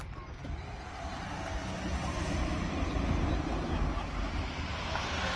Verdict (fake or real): real